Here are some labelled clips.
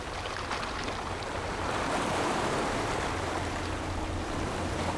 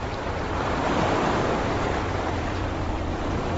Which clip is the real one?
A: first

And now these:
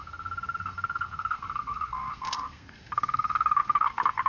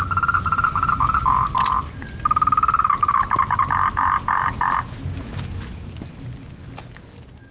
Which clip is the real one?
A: second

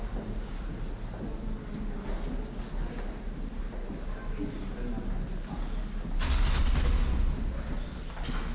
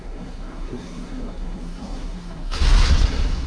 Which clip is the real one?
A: first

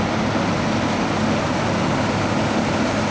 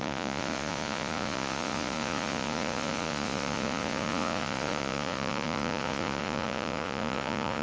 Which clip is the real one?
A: first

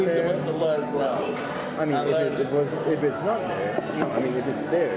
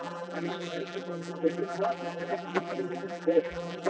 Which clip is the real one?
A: first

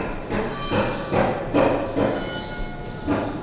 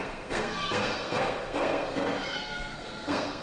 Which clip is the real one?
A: first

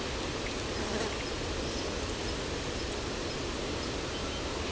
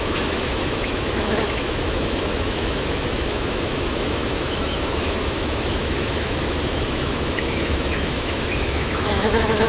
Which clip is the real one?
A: first